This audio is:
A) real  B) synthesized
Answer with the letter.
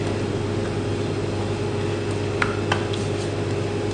A